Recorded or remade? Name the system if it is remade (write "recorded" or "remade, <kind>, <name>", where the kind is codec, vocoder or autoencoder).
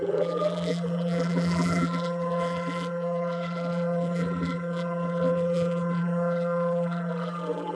remade, vocoder, BigVGAN v2